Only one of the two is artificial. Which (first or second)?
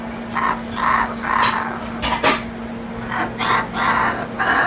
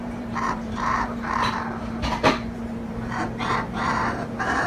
second